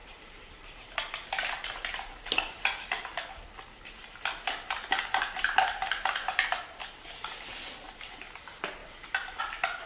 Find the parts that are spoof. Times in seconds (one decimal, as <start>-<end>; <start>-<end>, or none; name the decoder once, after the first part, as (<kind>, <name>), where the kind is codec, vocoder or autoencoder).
none